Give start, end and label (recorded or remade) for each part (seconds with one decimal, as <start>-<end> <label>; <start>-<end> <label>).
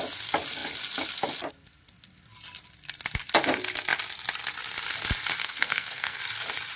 0.0-5.4 recorded; 5.4-6.2 remade; 6.2-6.8 recorded